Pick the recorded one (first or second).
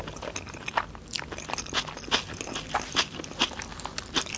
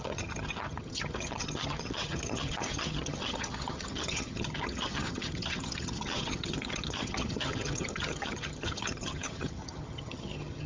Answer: first